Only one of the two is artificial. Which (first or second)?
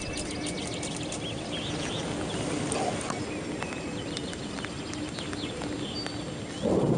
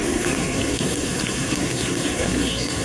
second